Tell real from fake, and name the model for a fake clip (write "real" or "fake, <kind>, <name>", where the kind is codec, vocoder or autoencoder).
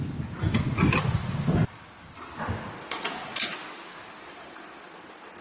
real